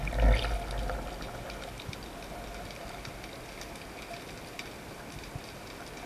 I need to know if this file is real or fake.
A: real